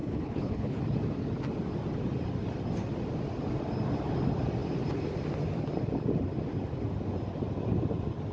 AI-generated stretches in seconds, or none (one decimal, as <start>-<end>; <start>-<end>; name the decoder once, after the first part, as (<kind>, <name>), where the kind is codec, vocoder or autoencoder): 0.0-0.8 (codec, HILCodec)